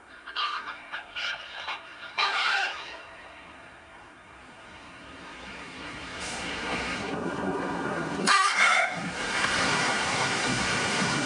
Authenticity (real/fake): fake